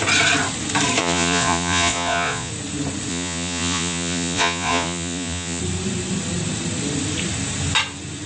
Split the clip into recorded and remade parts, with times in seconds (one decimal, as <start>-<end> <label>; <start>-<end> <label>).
0.0-1.0 recorded; 1.0-2.5 remade; 2.5-3.1 recorded; 3.1-5.6 remade; 5.6-8.3 recorded